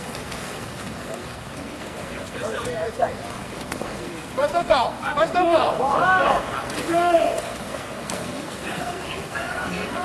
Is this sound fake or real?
fake